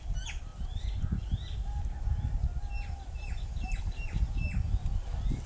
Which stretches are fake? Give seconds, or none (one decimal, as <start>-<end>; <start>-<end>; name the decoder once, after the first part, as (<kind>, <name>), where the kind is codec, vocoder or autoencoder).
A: none